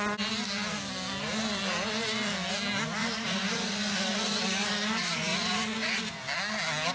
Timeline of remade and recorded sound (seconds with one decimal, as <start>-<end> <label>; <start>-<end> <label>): 0.0-3.0 recorded; 3.0-6.0 remade; 6.0-6.9 recorded